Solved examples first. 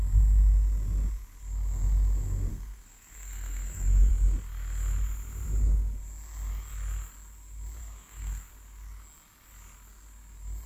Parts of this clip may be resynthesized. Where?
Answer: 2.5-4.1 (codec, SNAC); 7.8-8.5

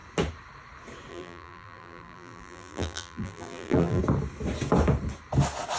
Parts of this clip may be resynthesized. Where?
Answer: 1.1-4.0 (vocoder, BigVGAN v2)

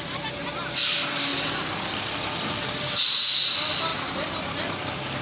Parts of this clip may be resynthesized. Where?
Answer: none

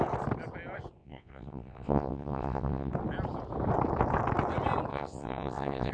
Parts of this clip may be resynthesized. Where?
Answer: 1.0-2.9 (vocoder, WaveNeXt); 4.9-5.9

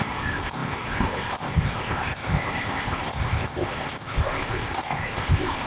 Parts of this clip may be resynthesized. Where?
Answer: 0.0-5.7 (codec, ZipCodec)

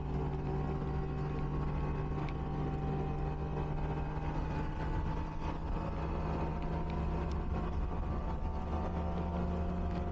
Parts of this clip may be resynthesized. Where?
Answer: none

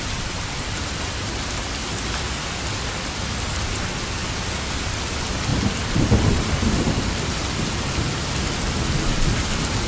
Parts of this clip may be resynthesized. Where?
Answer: none

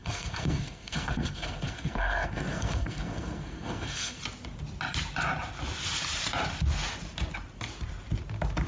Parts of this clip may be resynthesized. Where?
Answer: 0.0-4.2 (codec, SNAC)